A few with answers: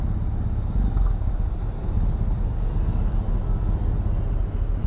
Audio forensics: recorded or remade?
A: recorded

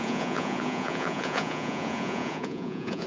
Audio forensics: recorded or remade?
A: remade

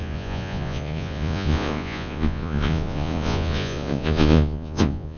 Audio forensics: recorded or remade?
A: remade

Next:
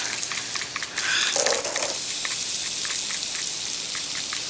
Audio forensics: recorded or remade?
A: recorded